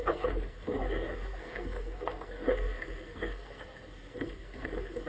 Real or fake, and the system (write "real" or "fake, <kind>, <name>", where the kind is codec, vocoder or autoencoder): fake, codec, SNAC